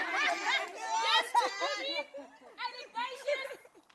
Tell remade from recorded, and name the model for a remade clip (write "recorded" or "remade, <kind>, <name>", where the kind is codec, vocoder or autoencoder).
recorded